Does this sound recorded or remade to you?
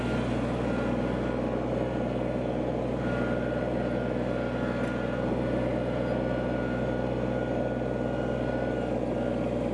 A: recorded